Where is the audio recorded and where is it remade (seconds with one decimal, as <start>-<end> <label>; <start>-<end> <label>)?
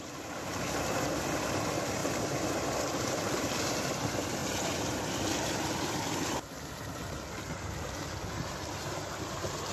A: 0.0-2.0 recorded; 2.0-3.6 remade; 3.6-9.7 recorded